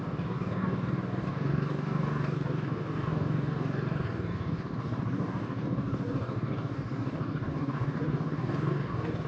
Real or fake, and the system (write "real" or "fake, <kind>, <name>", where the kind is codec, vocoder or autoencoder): fake, codec, DAC